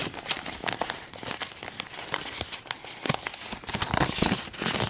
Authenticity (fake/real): real